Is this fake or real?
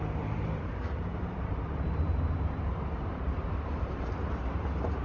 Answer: fake